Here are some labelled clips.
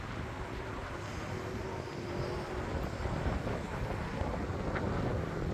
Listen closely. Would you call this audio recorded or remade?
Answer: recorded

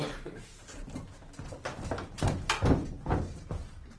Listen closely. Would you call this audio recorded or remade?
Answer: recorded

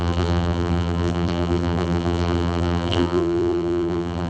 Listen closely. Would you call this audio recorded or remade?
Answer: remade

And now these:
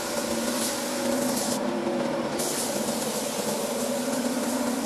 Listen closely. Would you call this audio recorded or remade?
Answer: remade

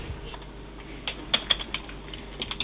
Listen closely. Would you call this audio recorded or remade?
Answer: recorded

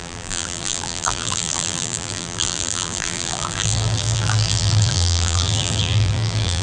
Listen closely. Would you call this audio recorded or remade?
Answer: remade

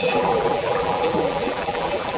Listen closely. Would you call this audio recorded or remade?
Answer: remade